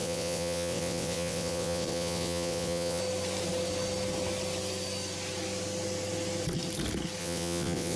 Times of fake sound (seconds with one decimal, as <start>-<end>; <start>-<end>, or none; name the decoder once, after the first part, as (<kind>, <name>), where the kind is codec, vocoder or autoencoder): 0.0-3.0 (vocoder, WaveNeXt); 7.2-8.0